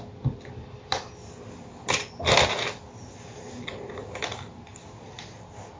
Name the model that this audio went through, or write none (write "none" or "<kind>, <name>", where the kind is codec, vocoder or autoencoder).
none